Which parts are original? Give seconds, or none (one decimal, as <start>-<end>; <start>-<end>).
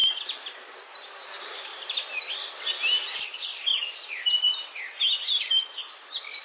0.0-6.4